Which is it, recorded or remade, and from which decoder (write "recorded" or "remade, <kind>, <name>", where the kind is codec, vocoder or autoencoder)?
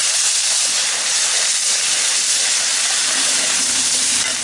remade, vocoder, BigVGAN v2